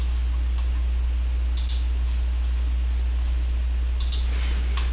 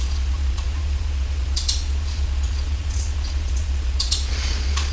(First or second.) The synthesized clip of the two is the second